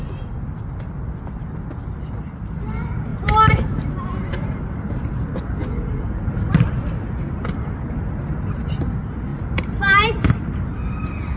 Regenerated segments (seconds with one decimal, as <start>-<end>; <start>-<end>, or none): 3.1-4.8; 9.3-10.3